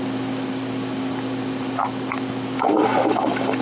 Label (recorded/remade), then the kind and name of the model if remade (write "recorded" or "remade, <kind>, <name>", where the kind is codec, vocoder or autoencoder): recorded